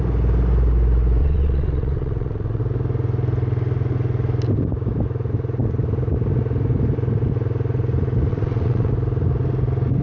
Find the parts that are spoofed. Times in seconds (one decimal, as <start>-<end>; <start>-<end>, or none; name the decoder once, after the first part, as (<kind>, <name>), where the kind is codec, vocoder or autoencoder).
1.2-2.6 (vocoder, WaveNeXt); 8.3-8.9